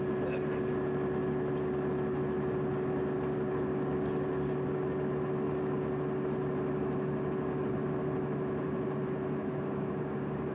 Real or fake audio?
real